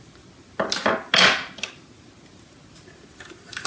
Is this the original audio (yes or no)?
yes